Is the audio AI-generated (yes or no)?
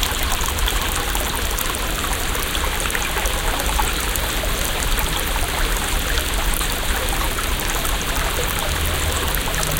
no